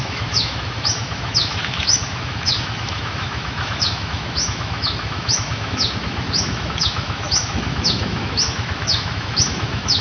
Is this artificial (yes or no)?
yes